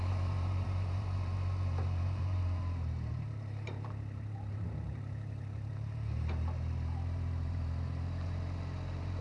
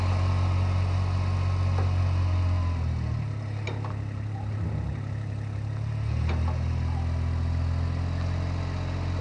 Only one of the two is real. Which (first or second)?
second